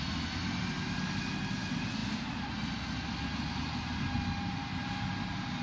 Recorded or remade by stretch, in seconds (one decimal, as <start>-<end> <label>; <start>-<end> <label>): 0.0-5.6 recorded